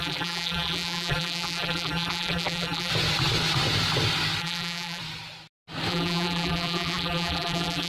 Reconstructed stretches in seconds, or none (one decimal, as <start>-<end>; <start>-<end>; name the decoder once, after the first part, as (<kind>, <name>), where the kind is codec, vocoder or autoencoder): 0.0-2.9 (vocoder, BigVGAN v2); 4.4-5.0; 5.9-7.9